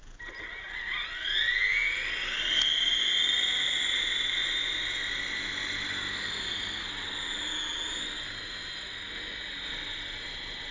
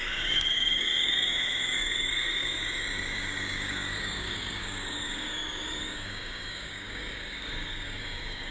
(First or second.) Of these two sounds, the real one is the first